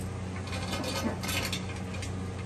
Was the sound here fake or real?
real